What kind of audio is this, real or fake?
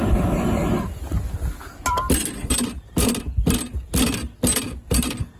real